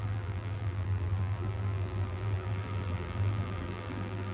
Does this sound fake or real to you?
fake